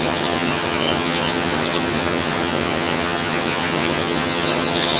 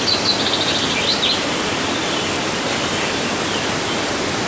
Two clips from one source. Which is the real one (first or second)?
second